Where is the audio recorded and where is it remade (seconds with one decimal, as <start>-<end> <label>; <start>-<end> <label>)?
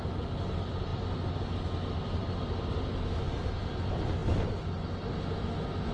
0.0-5.9 recorded